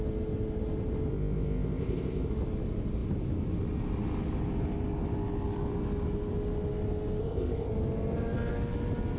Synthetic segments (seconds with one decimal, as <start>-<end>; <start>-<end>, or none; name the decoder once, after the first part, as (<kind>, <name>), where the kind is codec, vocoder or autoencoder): 1.1-2.3 (codec, ZipCodec); 7.2-7.7